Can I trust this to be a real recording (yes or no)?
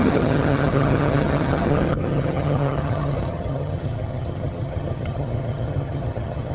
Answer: no